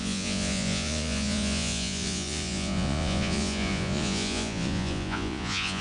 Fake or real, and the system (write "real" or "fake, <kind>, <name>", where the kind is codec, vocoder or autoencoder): fake, vocoder, Vocos